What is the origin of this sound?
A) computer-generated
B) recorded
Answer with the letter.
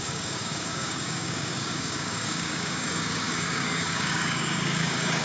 A